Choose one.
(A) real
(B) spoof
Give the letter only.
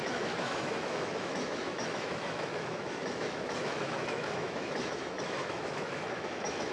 B